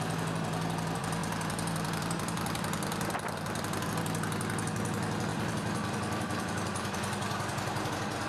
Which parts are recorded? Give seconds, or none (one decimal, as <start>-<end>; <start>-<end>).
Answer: 0.0-1.2; 3.9-5.3; 7.9-8.3